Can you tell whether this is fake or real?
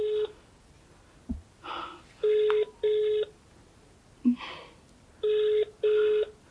real